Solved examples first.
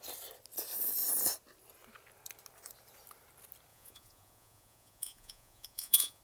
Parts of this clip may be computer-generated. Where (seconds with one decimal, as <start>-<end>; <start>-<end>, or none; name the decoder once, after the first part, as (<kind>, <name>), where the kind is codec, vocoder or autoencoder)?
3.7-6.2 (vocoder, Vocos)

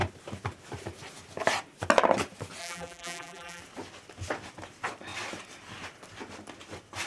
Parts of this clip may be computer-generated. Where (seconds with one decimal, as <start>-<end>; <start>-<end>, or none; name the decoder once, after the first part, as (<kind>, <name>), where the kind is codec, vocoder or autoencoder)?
2.6-3.6 (vocoder, BigVGAN v2)

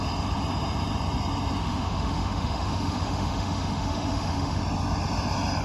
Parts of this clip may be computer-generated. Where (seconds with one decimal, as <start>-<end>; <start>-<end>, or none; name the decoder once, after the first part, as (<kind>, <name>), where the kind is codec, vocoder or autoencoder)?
1.6-4.6 (autoencoder, DAC-VAE)

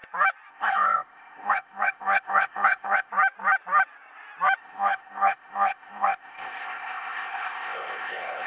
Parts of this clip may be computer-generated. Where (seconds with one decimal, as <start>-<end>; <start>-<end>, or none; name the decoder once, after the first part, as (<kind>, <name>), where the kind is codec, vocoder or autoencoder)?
0.5-3.1 (codec, ZipCodec); 4.6-8.5